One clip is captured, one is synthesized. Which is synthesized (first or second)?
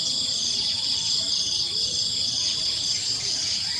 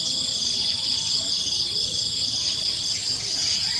first